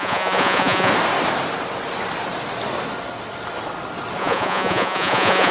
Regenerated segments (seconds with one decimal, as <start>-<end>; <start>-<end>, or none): 0.0-0.9; 4.2-5.5